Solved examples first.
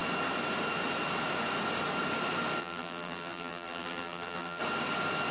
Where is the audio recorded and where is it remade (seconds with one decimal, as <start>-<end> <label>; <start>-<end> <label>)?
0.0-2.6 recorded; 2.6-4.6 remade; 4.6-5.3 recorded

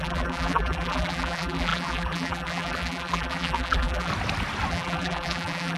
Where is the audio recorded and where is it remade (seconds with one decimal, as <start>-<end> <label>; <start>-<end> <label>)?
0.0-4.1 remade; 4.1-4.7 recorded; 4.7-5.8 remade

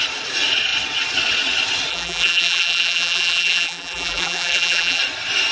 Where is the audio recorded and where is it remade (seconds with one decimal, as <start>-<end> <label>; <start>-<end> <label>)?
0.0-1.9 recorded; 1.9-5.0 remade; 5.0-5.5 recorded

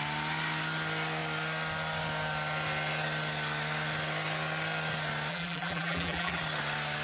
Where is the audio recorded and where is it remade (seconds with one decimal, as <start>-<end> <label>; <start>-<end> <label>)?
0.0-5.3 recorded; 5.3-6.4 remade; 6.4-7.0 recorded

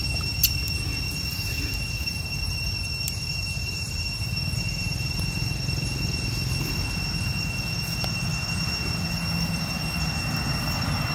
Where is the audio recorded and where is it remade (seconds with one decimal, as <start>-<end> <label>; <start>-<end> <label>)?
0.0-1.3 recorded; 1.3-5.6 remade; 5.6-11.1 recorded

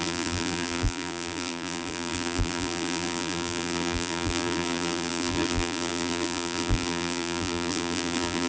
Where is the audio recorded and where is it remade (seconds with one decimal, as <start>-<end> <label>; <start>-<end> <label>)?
0.0-8.5 remade

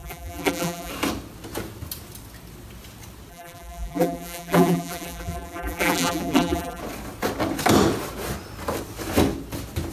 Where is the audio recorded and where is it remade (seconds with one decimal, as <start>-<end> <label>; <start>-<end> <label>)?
0.0-0.9 remade; 0.9-3.3 recorded; 3.3-6.8 remade; 6.8-9.9 recorded